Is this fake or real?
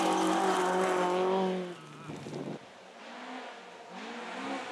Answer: real